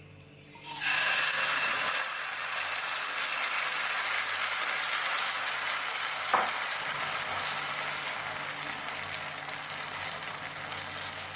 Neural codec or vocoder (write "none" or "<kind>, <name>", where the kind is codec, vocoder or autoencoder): none